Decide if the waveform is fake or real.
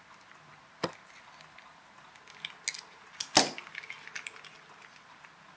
real